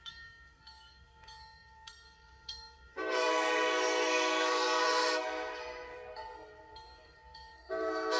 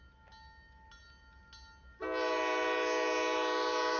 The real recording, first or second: second